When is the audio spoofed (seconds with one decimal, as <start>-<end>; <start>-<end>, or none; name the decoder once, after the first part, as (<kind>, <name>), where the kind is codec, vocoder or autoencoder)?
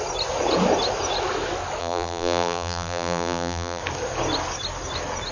1.8-3.8 (vocoder, BigVGAN v2)